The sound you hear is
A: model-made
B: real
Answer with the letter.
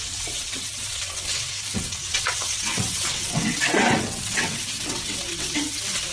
A